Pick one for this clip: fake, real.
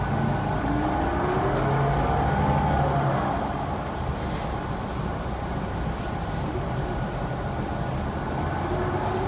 real